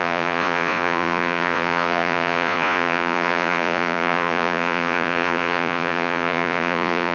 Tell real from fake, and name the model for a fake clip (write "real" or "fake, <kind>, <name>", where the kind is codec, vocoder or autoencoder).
fake, vocoder, Vocos